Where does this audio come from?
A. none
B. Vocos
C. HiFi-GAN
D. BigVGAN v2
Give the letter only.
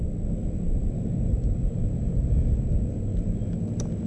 A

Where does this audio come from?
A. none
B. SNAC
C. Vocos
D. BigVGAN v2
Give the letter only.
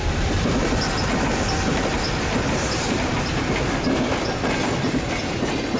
A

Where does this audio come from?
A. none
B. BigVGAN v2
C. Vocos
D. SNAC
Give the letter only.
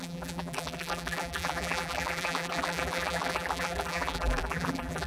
B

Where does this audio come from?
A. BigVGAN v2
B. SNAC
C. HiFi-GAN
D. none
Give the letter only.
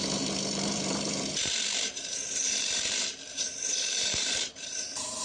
A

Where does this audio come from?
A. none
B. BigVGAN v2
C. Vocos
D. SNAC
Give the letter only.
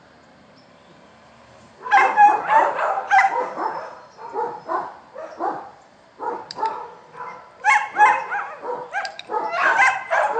B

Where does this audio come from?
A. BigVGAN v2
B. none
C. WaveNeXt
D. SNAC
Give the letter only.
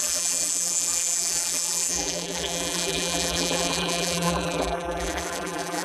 A